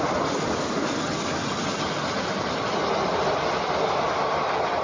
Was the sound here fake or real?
real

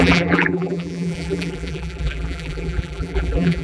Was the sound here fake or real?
fake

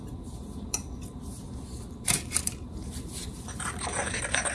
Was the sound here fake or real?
fake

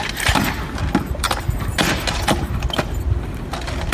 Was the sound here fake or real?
real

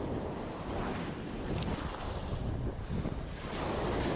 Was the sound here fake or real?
real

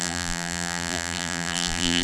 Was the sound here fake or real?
fake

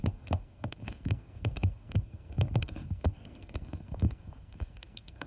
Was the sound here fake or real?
fake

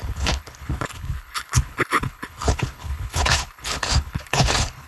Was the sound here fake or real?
fake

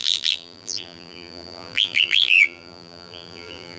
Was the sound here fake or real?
fake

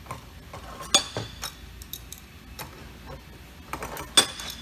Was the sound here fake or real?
real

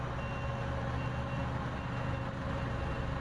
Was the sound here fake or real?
real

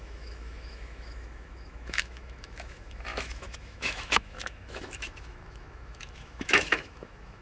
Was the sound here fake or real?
fake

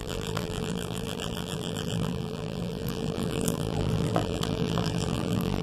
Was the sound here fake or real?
fake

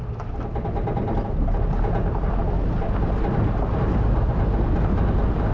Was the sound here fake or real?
real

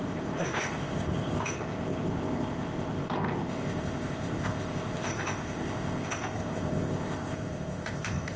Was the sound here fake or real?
fake